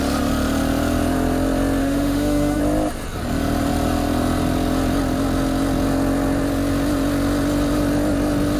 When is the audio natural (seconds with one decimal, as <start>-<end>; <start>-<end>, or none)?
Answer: 0.0-1.8; 2.6-8.6